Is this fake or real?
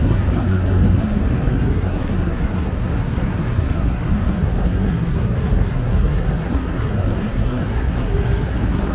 fake